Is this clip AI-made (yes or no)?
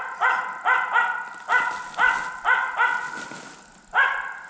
no